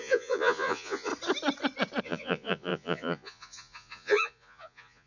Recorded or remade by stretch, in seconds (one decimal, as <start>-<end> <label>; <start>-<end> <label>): 0.0-1.1 remade; 1.1-2.0 recorded; 2.0-5.1 remade